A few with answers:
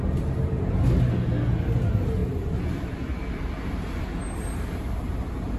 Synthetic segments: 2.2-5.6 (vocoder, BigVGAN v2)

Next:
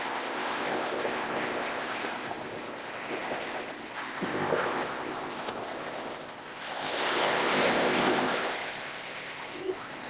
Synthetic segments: 0.0-10.1 (codec, ZipCodec)

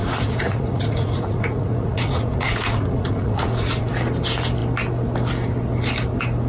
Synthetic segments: 0.0-3.9 (vocoder, Vocos)

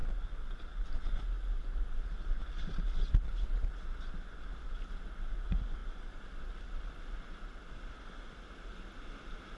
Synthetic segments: none

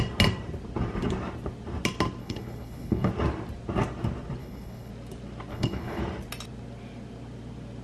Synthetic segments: 2.2-3.1 (codec, HILCodec); 4.4-4.9; 5.5-6.0

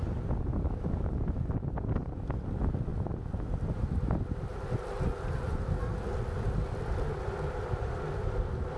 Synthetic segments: none

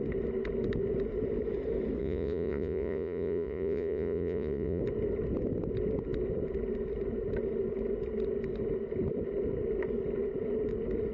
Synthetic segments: 2.0-4.8 (vocoder, Vocos)